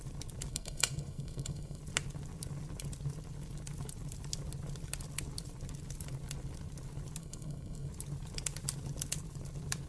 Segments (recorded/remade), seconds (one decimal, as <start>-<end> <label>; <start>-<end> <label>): 0.0-0.5 recorded; 0.5-1.8 remade; 1.8-7.2 recorded; 7.2-7.9 remade; 7.9-9.9 recorded